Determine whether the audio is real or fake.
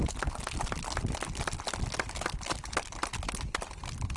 real